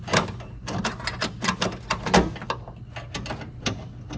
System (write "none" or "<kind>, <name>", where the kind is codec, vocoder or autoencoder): none